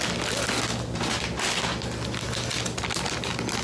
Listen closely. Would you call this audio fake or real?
real